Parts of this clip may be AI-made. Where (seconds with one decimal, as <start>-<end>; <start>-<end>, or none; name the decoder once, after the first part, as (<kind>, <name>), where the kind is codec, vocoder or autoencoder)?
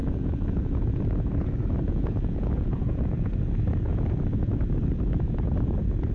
0.0-3.3 (vocoder, Vocos); 3.9-4.6